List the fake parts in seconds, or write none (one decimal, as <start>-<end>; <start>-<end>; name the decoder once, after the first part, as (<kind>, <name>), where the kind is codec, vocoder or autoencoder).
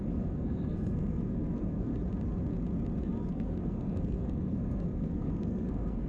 0.0-1.9 (codec, SNAC); 3.3-6.1